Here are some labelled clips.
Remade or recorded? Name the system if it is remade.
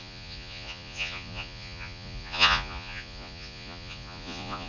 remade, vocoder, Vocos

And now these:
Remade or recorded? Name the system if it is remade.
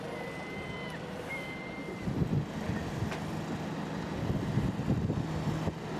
recorded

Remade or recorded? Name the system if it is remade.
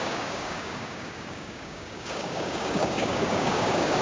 remade, codec, DAC